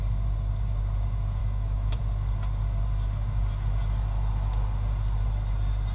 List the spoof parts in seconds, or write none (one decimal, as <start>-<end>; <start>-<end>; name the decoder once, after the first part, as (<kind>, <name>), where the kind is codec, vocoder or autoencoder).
1.4-2.0 (autoencoder, DAC-VAE)